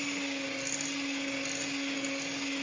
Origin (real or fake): real